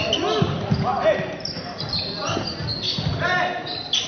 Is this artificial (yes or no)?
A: no